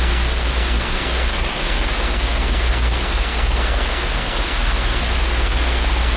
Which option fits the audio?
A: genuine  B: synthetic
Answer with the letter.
B